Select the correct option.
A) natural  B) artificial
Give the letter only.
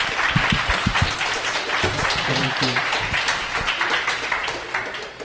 B